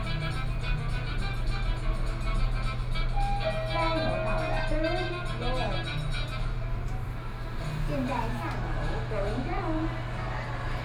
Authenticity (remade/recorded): recorded